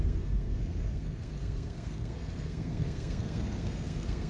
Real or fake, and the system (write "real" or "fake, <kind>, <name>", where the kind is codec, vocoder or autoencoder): fake, codec, SNAC